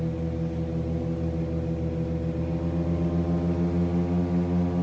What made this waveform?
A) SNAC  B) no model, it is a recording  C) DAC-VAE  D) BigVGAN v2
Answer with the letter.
B